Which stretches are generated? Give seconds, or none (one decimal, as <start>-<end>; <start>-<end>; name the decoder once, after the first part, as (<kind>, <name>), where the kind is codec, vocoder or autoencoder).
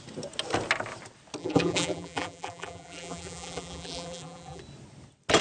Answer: 1.4-4.6 (vocoder, BigVGAN v2)